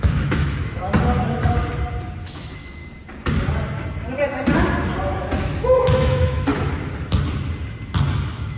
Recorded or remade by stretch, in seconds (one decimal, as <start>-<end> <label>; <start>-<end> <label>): 0.0-0.9 remade; 0.9-2.2 recorded; 2.2-2.8 remade; 2.8-5.4 recorded; 5.4-6.5 remade; 6.5-8.2 recorded; 8.2-8.6 remade